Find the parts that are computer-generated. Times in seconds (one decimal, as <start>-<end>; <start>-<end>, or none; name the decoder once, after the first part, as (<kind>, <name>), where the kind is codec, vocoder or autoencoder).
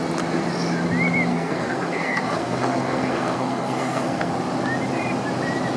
1.3-4.3 (codec, SNAC)